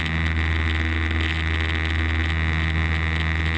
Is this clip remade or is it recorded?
recorded